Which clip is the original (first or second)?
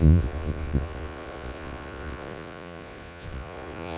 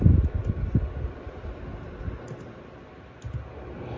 second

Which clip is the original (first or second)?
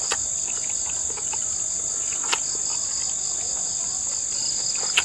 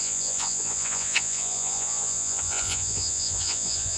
first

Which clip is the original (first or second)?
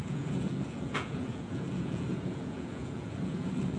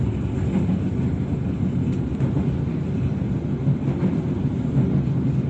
second